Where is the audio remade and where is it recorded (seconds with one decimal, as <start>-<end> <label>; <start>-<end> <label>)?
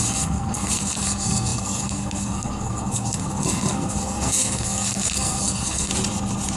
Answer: 0.0-5.9 remade; 5.9-6.6 recorded